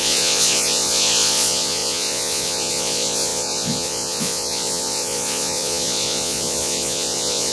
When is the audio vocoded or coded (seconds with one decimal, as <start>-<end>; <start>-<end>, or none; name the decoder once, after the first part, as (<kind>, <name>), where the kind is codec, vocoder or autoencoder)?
0.0-7.5 (vocoder, Vocos)